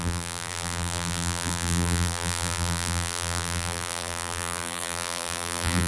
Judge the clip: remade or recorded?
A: remade